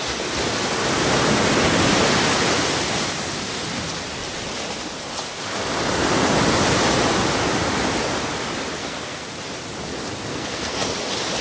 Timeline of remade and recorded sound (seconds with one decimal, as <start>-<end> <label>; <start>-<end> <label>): 0.0-8.8 recorded; 8.8-9.3 remade; 9.3-10.3 recorded; 10.3-11.0 remade; 11.0-11.4 recorded